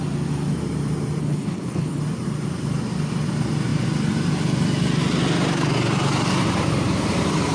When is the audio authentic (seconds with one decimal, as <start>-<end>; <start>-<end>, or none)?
0.0-1.2; 2.0-7.5